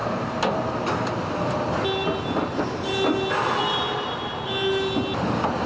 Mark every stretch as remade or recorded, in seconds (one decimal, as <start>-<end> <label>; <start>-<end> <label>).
0.0-5.7 recorded